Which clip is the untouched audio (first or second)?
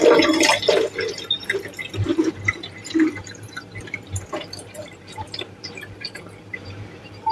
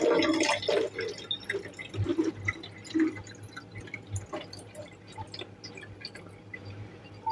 second